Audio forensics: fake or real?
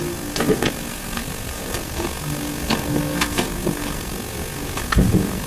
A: fake